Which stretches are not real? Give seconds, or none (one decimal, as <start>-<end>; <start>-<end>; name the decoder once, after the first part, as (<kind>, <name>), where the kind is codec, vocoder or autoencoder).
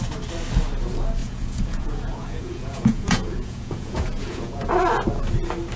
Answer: 1.2-4.7 (vocoder, Vocos)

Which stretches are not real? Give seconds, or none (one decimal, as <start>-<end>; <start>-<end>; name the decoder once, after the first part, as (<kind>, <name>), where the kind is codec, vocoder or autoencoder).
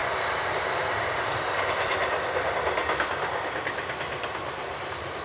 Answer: 0.8-5.2 (vocoder, BigVGAN v2)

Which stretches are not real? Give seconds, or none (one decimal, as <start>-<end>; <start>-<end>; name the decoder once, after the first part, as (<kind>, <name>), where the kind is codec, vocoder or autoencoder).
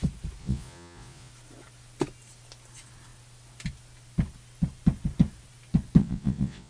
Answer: 0.4-1.3 (vocoder, Vocos); 6.0-6.7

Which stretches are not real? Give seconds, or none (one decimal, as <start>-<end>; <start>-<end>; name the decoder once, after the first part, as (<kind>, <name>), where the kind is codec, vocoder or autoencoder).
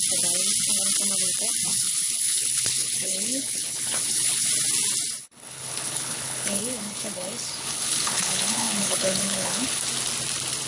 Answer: 1.7-4.5 (codec, HILCodec); 5.2-9.8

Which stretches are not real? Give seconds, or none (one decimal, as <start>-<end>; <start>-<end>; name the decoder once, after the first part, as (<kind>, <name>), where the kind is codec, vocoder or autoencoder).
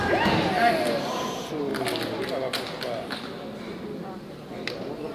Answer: none